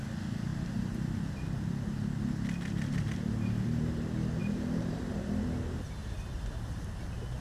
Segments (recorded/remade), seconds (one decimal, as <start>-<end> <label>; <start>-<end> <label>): 0.0-4.4 recorded; 4.4-5.1 remade; 5.1-6.0 recorded; 6.0-6.7 remade; 6.7-7.4 recorded

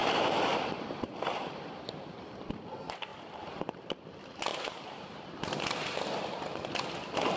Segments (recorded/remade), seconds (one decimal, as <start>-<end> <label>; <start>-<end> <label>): 0.0-1.9 remade; 1.9-3.1 recorded; 3.1-3.9 remade; 3.9-4.5 recorded; 4.5-5.1 remade; 5.1-7.4 recorded